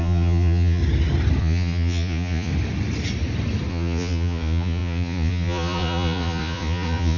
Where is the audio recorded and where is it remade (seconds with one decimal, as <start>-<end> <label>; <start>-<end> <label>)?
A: 0.0-0.8 remade; 0.8-1.4 recorded; 1.4-2.5 remade; 2.5-3.7 recorded; 3.7-7.2 remade